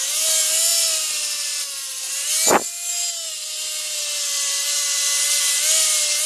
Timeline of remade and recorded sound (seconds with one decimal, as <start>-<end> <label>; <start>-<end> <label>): 0.0-6.3 recorded